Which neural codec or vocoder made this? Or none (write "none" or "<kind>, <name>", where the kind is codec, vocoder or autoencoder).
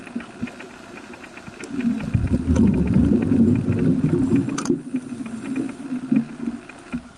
none